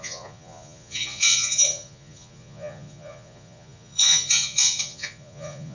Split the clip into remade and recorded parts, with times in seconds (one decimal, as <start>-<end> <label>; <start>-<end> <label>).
0.0-5.7 remade

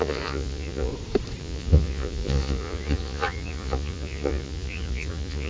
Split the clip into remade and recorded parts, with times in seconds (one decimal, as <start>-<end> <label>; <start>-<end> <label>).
0.0-0.9 remade; 0.9-1.4 recorded; 1.4-5.5 remade